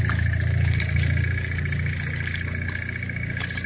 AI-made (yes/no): no